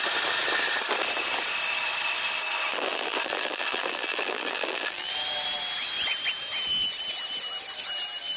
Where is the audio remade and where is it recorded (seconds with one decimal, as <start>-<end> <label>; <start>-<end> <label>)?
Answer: 0.0-2.7 recorded; 2.7-5.1 remade; 5.1-8.4 recorded